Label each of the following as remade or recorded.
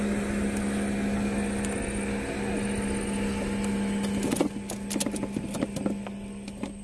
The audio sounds recorded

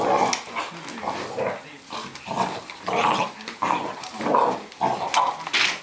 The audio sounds recorded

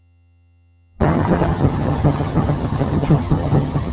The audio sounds remade